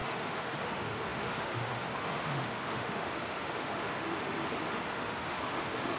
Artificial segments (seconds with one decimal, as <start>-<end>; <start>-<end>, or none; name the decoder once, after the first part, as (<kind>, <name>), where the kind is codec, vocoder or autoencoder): 0.0-6.0 (autoencoder, DAC-VAE)